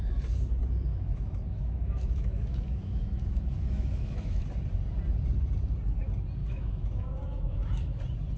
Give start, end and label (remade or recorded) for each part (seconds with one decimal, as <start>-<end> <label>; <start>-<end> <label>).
0.0-0.9 recorded; 0.9-4.4 remade; 4.4-6.4 recorded; 6.4-8.0 remade; 8.0-8.4 recorded